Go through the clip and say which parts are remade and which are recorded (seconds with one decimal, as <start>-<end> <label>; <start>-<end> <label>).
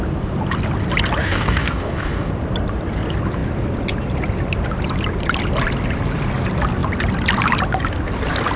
0.0-1.2 recorded; 1.2-2.3 remade; 2.3-8.6 recorded